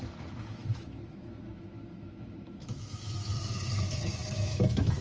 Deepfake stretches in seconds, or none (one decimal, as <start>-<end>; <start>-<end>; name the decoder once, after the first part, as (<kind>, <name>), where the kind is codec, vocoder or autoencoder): 0.0-5.0 (autoencoder, DAC-VAE)